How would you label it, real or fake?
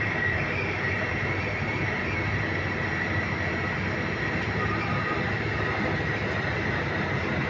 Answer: real